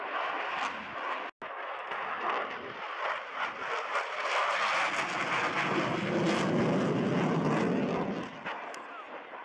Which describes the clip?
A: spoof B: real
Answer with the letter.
B